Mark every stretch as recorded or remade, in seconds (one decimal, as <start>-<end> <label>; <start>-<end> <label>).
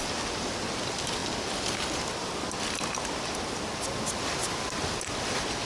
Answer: 0.0-5.7 recorded